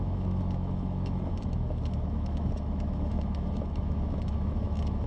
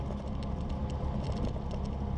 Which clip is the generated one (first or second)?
first